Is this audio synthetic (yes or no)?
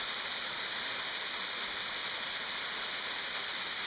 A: no